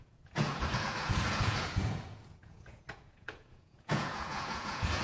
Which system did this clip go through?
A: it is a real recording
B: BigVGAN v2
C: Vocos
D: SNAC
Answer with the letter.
C